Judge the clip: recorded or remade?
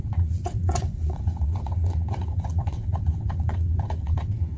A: remade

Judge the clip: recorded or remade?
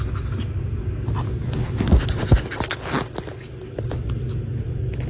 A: recorded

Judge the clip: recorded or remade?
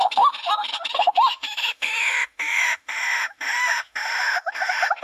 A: remade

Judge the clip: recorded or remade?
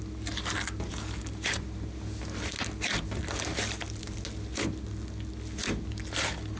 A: recorded